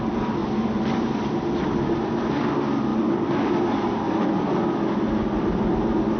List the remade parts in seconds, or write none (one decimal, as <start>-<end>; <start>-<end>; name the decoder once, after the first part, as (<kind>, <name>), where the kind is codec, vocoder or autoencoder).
0.4-2.3 (vocoder, BigVGAN v2)